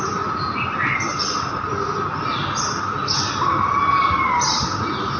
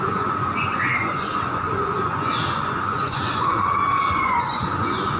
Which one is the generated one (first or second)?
second